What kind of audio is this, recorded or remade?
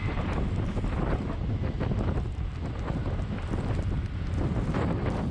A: recorded